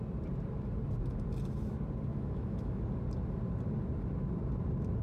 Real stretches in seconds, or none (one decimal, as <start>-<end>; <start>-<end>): 0.0-2.1; 2.8-5.0